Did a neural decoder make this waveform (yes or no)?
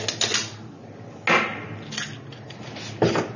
no